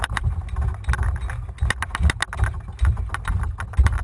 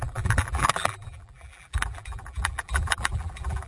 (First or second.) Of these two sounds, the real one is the first